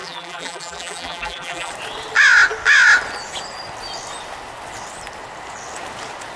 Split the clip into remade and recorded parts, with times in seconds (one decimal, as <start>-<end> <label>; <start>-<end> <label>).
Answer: 0.0-1.7 remade; 1.7-6.4 recorded